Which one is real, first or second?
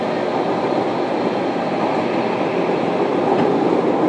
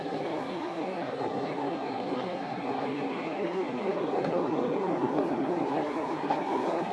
first